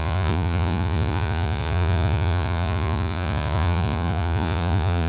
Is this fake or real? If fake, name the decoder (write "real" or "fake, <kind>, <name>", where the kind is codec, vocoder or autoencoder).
fake, vocoder, Vocos